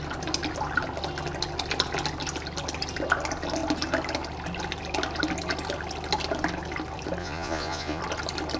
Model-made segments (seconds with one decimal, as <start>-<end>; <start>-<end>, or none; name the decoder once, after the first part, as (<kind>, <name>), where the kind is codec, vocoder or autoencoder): 7.2-8.0 (vocoder, Vocos)